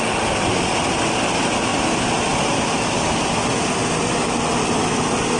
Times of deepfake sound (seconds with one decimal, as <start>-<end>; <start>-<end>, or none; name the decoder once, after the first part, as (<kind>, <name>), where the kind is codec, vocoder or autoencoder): none